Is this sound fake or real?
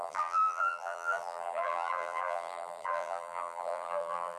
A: fake